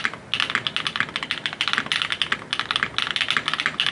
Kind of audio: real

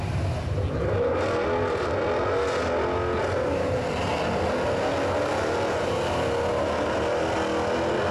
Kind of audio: real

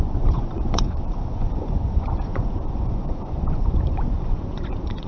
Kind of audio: fake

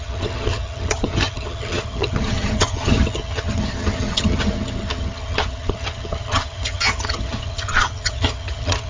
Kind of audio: fake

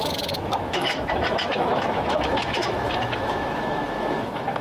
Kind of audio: fake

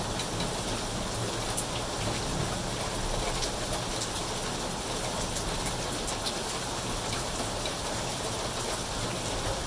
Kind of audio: real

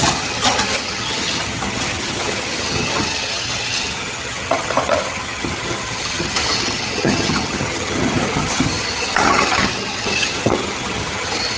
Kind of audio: fake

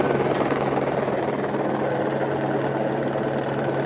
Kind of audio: real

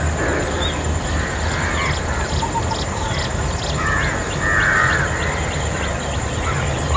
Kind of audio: real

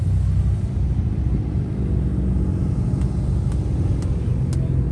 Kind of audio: real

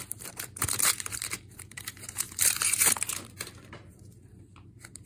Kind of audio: fake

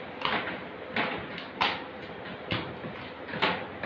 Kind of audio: real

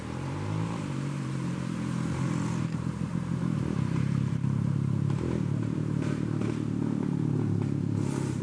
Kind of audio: fake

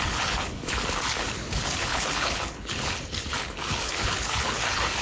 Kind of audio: fake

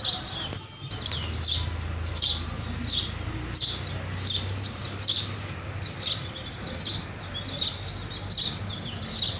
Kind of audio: real